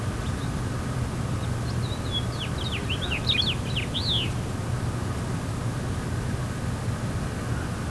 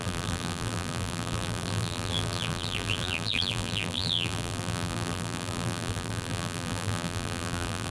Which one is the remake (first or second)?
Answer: second